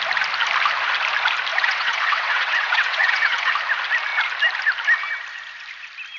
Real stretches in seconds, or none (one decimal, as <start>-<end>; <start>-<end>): 0.0-1.5; 3.5-6.2